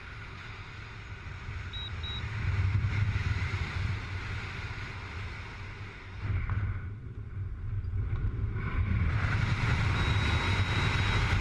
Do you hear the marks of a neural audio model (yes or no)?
no